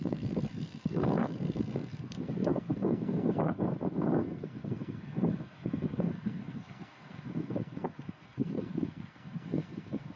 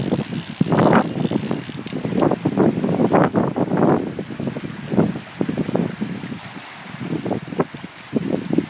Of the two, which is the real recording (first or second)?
second